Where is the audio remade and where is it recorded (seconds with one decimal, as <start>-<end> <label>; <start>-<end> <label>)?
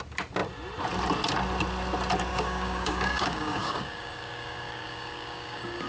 0.0-2.3 recorded; 2.3-5.9 remade